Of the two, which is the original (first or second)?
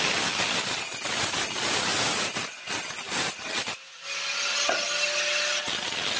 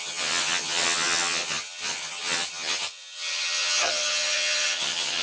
first